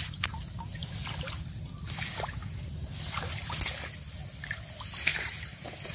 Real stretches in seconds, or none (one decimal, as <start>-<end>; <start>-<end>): 0.0-5.1